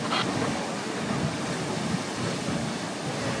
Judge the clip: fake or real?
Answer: real